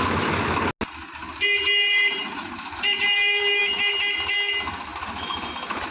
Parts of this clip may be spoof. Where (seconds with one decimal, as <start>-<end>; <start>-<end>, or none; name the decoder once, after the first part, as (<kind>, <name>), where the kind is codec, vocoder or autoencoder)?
1.3-3.6 (vocoder, BigVGAN v2); 4.9-5.5

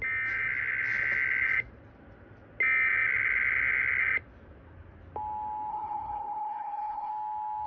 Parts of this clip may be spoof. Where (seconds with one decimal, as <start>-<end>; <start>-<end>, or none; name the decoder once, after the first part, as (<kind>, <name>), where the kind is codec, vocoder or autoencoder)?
5.7-7.1 (codec, HILCodec)